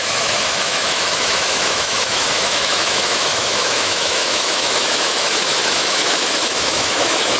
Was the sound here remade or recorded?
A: remade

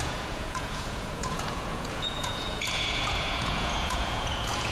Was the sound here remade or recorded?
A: remade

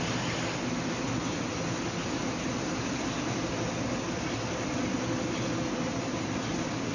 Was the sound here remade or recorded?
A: recorded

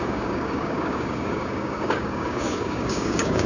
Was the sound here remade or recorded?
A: remade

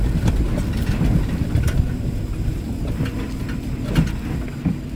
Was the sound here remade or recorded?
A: recorded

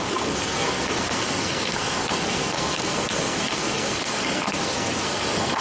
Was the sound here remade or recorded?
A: remade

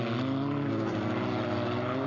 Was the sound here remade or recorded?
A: recorded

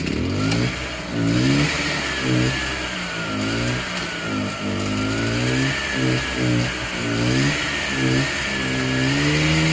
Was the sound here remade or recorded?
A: recorded